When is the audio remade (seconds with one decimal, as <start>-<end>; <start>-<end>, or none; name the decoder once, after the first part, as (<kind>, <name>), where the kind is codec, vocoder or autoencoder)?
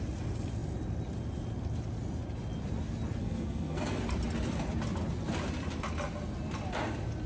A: 3.2-4.0 (codec, SNAC)